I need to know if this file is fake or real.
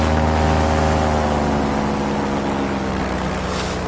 real